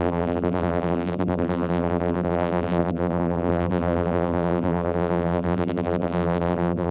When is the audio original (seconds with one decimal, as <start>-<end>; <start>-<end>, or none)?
none